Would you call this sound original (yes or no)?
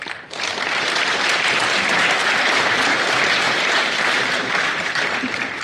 no